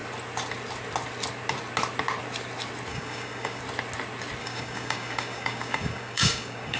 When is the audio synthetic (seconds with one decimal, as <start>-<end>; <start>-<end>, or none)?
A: 2.9-3.6; 4.4-6.8